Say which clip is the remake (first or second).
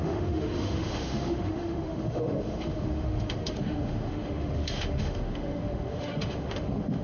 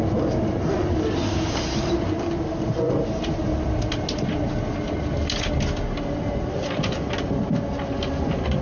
first